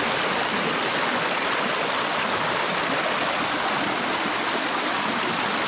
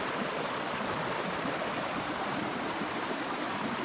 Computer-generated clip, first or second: second